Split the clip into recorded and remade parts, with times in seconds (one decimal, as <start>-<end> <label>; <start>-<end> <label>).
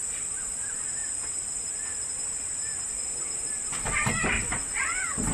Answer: 0.0-5.3 remade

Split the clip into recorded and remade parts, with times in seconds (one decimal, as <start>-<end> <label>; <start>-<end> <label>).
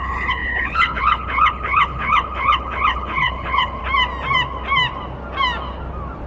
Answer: 0.0-3.8 remade; 3.8-6.3 recorded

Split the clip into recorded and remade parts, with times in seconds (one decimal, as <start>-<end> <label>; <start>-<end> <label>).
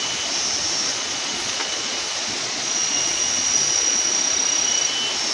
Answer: 0.0-0.9 recorded; 0.9-4.1 remade; 4.1-5.3 recorded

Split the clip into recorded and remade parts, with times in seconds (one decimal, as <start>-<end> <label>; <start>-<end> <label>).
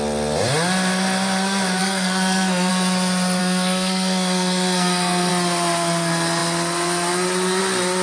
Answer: 0.0-1.8 recorded; 1.8-2.7 remade; 2.7-3.4 recorded; 3.4-5.3 remade; 5.3-8.0 recorded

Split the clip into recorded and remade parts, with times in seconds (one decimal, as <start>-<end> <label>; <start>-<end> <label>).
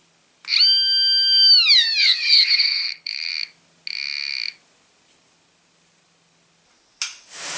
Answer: 0.0-2.0 recorded; 2.0-3.3 remade; 3.3-7.6 recorded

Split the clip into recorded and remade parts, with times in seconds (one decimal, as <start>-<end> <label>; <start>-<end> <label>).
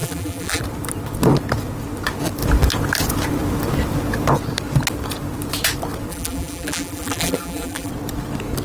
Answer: 0.0-0.6 remade; 0.6-6.1 recorded; 6.1-7.9 remade; 7.9-8.6 recorded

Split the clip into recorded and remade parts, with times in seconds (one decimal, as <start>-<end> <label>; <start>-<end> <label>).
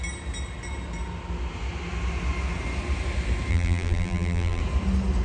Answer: 0.0-3.5 recorded; 3.5-4.6 remade; 4.6-5.2 recorded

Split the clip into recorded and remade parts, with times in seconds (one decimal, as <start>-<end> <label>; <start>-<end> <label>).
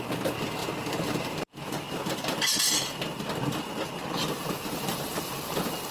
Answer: 0.0-0.6 recorded; 0.6-2.7 remade; 2.7-4.2 recorded; 4.2-5.3 remade; 5.3-5.9 recorded